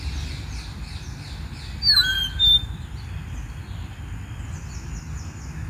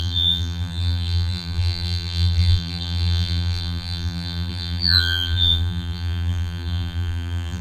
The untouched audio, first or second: first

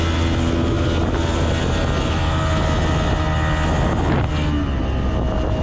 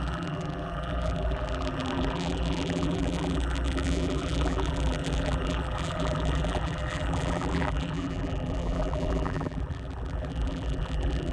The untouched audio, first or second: first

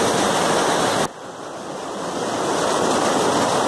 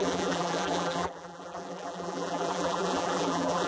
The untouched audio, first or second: first